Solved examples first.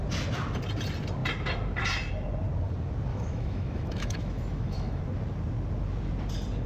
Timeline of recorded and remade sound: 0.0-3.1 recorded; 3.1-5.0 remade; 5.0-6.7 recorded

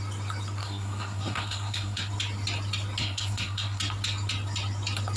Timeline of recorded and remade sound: 0.0-0.6 recorded; 0.6-2.1 remade; 2.1-3.0 recorded; 3.0-3.8 remade; 3.8-5.2 recorded

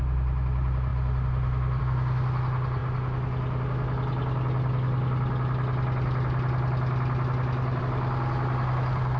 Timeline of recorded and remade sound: 0.0-9.2 recorded

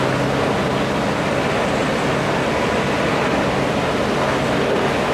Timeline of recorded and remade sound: 0.0-5.1 recorded

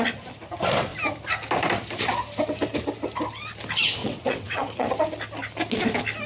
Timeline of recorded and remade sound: 0.0-4.0 recorded; 4.0-4.9 remade; 4.9-6.3 recorded

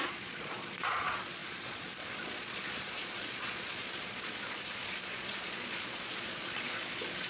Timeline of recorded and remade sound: 0.0-7.3 remade